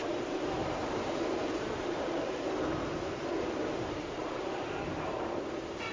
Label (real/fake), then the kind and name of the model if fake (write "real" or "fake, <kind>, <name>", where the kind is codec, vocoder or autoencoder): fake, vocoder, BigVGAN v2